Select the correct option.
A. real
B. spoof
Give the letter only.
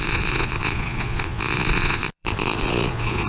B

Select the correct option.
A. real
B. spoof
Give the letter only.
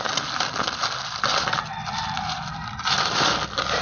A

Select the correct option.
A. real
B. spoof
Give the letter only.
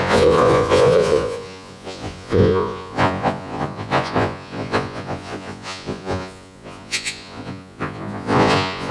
B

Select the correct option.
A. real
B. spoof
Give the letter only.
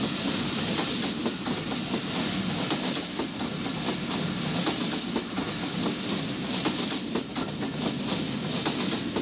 A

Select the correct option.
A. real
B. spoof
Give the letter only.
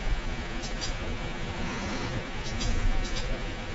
B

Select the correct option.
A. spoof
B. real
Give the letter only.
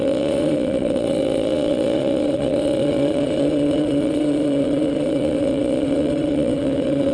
A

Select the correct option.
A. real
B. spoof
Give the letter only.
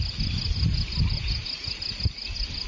A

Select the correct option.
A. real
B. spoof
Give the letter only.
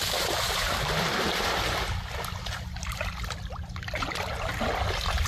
A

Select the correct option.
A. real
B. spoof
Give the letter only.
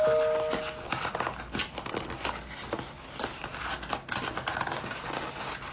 A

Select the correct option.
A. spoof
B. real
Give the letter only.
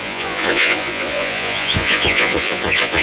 A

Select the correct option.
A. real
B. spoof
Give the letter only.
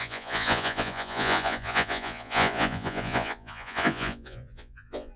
B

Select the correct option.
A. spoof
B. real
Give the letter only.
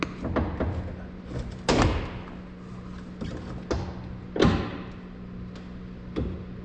B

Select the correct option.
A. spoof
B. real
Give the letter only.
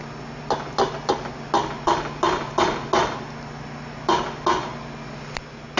B